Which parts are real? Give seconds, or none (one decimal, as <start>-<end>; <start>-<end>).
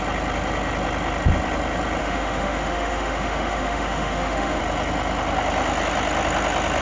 0.0-2.0; 4.6-6.8